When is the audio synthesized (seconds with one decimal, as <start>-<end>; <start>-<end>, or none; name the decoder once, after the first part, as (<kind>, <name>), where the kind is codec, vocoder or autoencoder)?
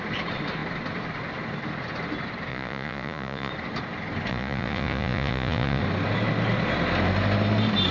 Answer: 2.5-3.5 (vocoder, Vocos); 4.3-5.8